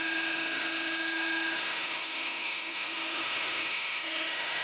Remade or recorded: remade